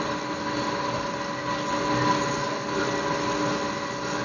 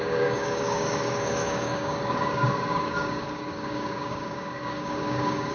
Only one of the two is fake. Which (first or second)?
second